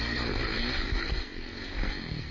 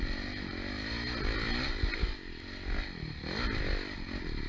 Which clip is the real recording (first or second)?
second